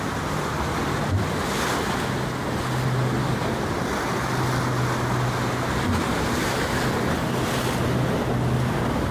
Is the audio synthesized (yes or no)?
no